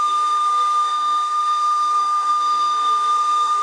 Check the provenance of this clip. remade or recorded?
remade